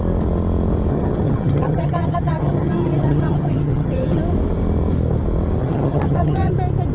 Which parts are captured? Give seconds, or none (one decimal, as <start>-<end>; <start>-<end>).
0.0-0.9; 4.2-5.6; 6.5-6.9